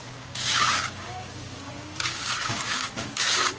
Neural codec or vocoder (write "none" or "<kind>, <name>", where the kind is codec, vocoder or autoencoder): codec, DAC